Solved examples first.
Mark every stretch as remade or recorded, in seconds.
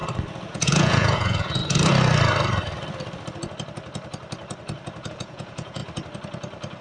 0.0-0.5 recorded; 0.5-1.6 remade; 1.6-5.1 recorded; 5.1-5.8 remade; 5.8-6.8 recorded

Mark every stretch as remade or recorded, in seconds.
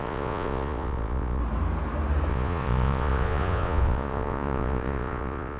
0.0-1.4 remade; 1.4-2.3 recorded; 2.3-5.6 remade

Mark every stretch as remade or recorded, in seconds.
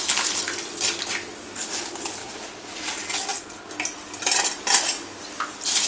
0.0-2.2 recorded; 2.2-2.7 remade; 2.7-5.9 recorded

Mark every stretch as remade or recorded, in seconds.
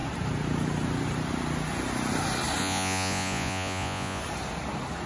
0.0-2.6 recorded; 2.6-4.2 remade; 4.2-5.1 recorded